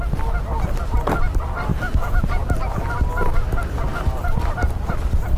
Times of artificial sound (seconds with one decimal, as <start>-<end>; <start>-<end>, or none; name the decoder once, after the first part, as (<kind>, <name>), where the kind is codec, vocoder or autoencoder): none